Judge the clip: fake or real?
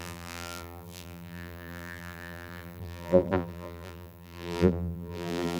fake